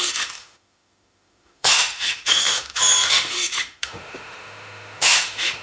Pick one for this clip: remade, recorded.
remade